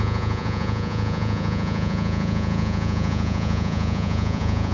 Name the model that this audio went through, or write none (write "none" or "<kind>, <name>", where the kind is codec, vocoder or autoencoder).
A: vocoder, Vocos